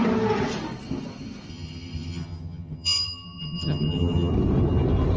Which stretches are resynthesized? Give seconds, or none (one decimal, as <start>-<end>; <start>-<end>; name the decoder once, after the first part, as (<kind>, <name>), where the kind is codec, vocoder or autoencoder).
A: 1.5-4.3 (vocoder, HiFi-GAN)